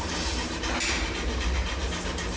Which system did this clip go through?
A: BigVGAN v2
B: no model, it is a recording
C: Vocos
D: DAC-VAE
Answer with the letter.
A